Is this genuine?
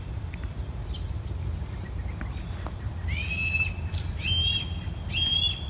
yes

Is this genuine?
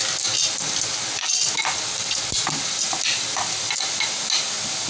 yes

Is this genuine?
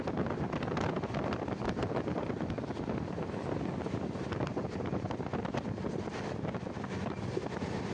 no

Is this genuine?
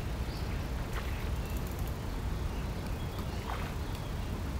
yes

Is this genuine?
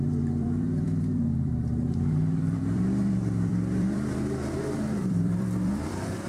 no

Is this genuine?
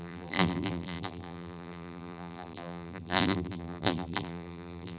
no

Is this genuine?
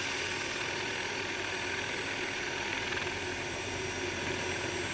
yes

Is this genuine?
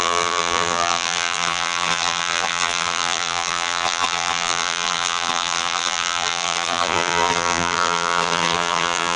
no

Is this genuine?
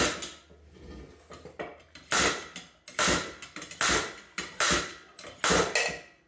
yes